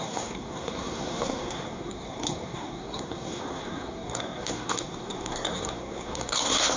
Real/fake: fake